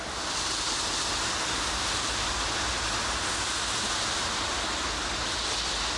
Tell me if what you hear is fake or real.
real